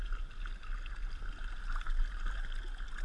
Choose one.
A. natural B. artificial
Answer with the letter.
A